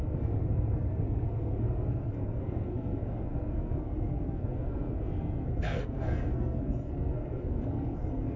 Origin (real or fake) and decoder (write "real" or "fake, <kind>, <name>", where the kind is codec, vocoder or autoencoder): fake, codec, SNAC